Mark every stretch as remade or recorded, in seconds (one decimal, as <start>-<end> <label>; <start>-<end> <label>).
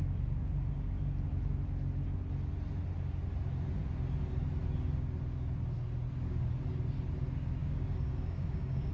0.0-7.6 recorded; 7.6-8.9 remade